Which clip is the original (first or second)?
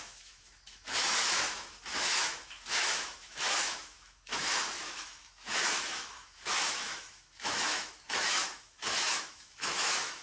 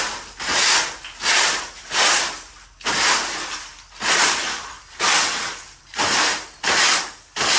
second